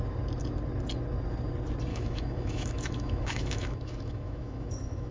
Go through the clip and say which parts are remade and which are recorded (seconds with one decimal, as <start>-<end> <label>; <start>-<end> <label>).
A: 0.0-1.9 recorded; 1.9-5.1 remade